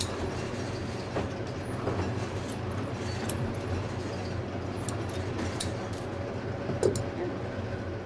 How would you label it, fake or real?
real